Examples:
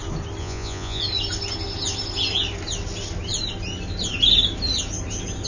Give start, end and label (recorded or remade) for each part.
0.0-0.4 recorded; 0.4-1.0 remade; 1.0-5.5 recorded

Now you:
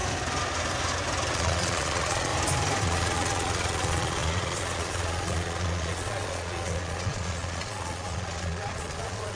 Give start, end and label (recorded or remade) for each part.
0.0-1.3 recorded; 1.3-2.3 remade; 2.3-2.8 recorded; 2.8-9.4 remade